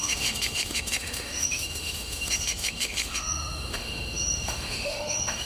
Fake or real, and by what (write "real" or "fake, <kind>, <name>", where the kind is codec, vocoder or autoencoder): fake, autoencoder, DAC-VAE